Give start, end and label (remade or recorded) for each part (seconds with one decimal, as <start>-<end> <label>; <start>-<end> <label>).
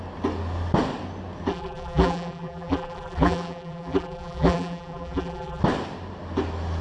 0.0-1.5 recorded; 1.5-5.6 remade; 5.6-6.8 recorded